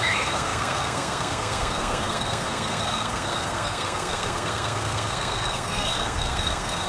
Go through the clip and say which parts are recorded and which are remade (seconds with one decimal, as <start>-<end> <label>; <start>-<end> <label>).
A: 0.0-6.9 remade